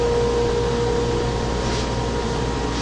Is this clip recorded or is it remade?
recorded